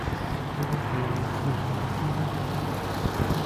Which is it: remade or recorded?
recorded